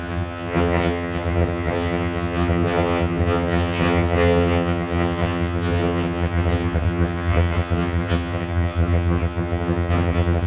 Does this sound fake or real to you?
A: fake